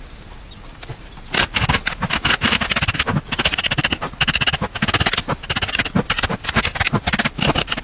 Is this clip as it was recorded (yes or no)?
yes